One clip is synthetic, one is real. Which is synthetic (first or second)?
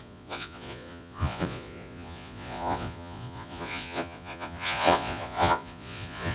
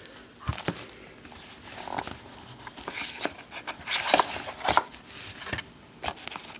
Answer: first